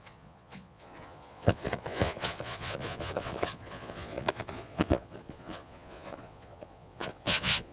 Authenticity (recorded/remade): remade